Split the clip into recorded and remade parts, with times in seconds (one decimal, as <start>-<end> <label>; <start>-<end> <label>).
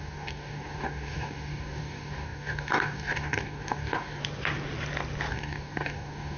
0.0-4.2 remade; 4.2-5.3 recorded; 5.3-6.4 remade